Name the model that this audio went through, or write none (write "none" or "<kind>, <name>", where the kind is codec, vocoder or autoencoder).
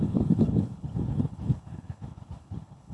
codec, HILCodec